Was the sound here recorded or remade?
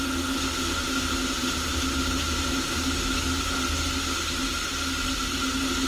recorded